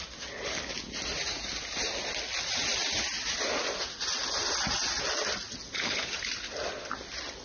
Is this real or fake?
real